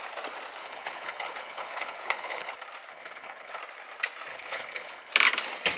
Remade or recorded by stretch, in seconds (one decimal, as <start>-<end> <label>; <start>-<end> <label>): 0.0-0.6 recorded; 0.6-2.5 remade; 2.5-2.9 recorded; 2.9-3.6 remade; 3.6-4.3 recorded; 4.3-5.1 remade; 5.1-5.8 recorded